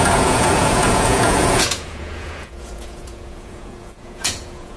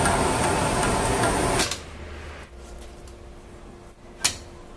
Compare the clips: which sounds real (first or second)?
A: second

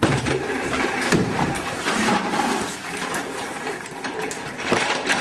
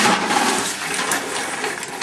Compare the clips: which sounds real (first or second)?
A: second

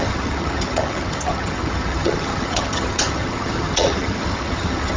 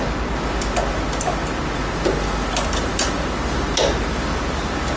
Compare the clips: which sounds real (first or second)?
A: second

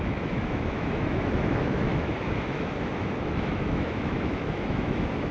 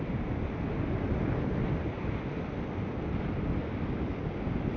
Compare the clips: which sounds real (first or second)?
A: second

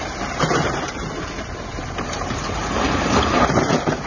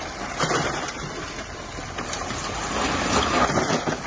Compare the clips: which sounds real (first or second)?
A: second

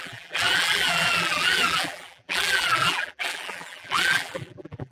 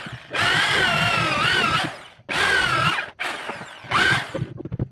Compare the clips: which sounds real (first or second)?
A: second